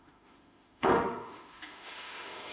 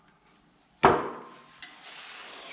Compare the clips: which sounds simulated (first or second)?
first